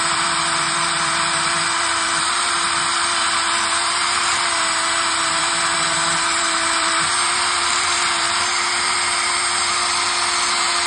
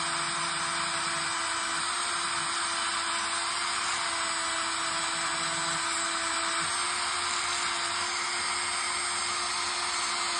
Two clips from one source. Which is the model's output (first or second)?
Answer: first